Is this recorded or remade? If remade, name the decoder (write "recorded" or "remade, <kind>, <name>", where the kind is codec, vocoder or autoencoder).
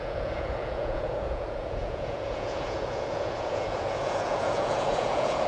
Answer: remade, vocoder, Vocos